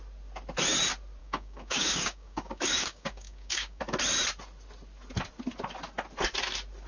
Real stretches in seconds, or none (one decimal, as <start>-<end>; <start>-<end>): 0.0-1.2; 3.8-6.9

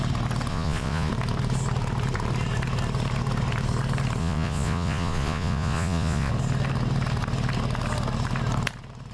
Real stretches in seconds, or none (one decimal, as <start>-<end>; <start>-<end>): 0.0-0.5; 1.1-4.2; 6.3-9.1